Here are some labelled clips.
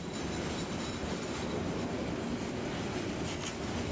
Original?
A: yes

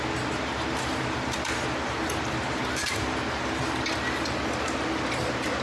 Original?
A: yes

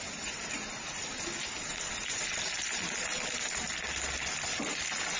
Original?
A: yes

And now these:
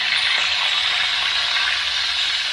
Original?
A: yes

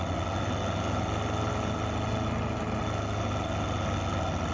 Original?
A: yes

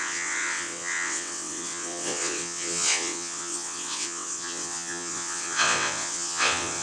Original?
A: no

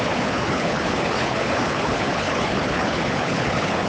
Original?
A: no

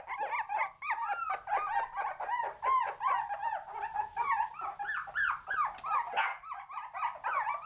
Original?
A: yes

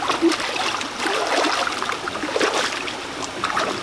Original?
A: yes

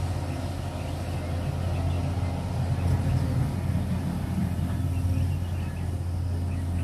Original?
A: yes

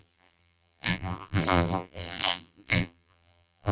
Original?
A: no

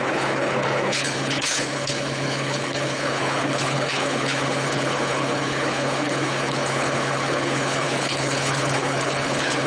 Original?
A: no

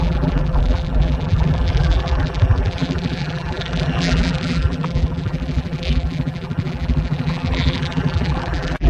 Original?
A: no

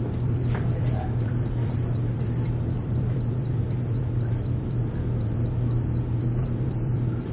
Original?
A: no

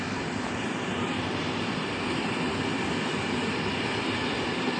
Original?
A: yes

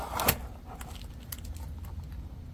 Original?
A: yes